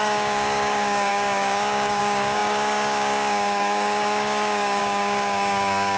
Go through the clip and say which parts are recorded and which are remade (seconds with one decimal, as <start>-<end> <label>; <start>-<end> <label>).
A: 0.0-6.0 remade